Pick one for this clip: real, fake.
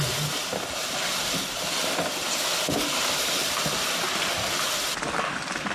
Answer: real